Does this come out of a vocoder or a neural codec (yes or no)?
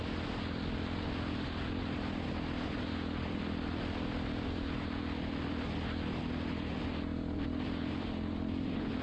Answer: no